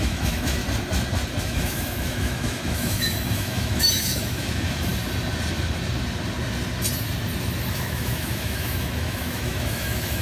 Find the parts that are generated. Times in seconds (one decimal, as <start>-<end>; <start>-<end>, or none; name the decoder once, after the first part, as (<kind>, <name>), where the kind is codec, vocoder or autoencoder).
0.0-0.6 (autoencoder, DAC-VAE); 1.4-4.9; 7.7-10.2